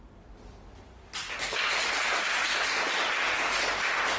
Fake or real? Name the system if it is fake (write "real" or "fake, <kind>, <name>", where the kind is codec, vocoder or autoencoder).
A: real